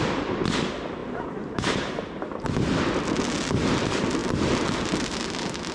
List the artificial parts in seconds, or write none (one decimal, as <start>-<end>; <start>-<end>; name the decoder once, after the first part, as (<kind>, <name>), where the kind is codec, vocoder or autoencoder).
1.0-2.1 (vocoder, BigVGAN v2)

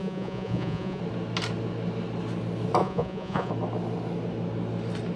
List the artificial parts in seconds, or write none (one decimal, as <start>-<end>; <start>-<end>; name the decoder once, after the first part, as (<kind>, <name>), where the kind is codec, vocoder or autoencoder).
0.0-1.0 (vocoder, Vocos); 2.8-3.5

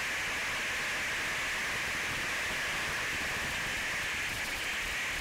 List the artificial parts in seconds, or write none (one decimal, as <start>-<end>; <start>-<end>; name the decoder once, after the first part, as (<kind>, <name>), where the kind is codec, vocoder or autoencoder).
1.6-4.7 (vocoder, BigVGAN v2)

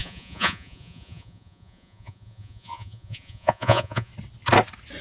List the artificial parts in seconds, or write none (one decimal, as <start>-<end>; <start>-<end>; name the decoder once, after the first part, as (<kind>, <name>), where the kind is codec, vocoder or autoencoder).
0.0-4.1 (vocoder, Vocos)